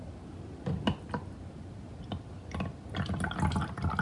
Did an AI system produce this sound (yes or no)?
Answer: no